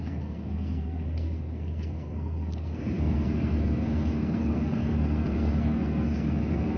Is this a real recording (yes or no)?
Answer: no